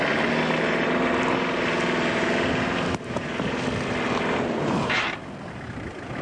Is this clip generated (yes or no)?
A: no